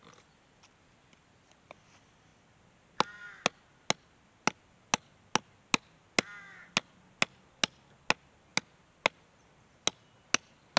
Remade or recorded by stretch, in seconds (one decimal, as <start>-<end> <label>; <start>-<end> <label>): 0.0-10.8 recorded